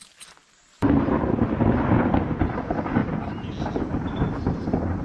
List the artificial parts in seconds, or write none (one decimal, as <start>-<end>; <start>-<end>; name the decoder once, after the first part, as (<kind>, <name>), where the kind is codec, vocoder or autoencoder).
none